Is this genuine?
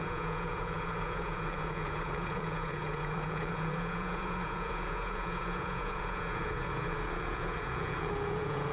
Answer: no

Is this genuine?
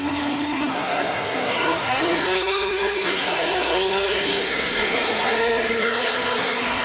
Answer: no